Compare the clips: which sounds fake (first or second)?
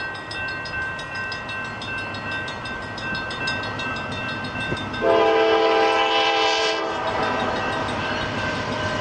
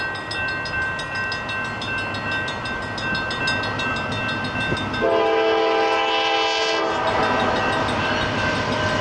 first